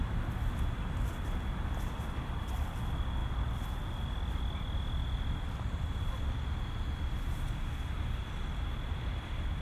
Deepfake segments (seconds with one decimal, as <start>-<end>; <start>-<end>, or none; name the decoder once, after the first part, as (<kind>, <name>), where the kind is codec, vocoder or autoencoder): none